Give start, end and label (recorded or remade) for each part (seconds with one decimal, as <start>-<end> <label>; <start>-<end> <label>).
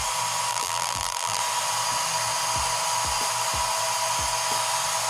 0.0-0.5 recorded; 0.5-1.4 remade; 1.4-5.1 recorded